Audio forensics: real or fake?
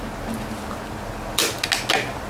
real